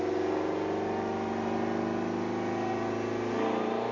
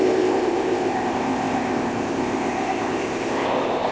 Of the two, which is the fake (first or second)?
second